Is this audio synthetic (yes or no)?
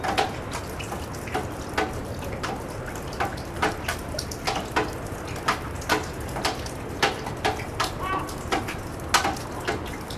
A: no